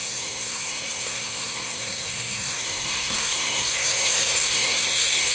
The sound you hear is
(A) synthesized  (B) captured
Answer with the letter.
A